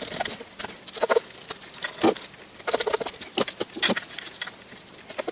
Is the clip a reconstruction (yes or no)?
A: no